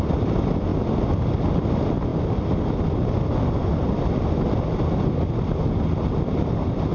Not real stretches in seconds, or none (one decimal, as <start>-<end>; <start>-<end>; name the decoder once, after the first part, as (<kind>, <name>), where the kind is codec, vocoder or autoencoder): none